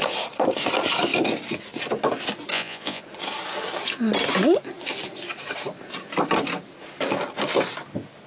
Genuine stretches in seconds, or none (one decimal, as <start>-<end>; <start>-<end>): 0.0-2.5; 3.0-8.3